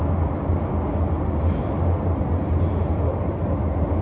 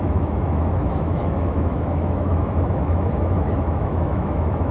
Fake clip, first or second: second